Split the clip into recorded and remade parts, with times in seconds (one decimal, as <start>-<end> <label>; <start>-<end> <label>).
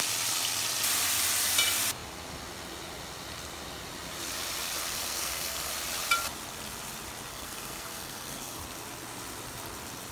0.0-4.8 recorded; 4.8-5.7 remade; 5.7-7.3 recorded; 7.3-8.6 remade; 8.6-10.1 recorded